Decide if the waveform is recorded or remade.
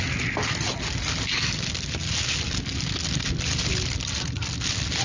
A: recorded